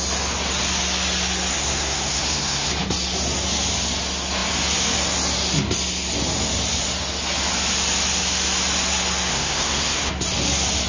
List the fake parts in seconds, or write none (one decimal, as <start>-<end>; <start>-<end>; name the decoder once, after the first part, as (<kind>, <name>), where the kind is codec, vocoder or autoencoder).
1.5-2.7 (codec, SNAC); 9.3-10.1